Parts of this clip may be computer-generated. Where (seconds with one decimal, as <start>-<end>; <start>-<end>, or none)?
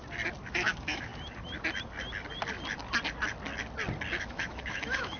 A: 0.5-1.1; 4.2-5.2